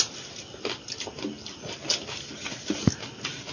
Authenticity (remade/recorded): recorded